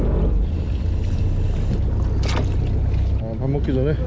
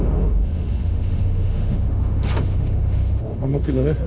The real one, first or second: first